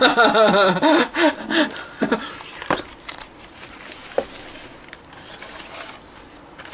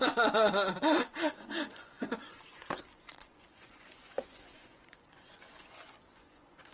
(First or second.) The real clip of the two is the first